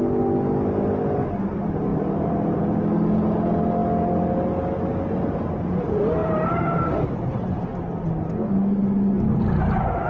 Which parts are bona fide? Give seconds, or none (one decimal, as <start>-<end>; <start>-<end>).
0.0-1.9; 2.6-6.2; 7.1-10.1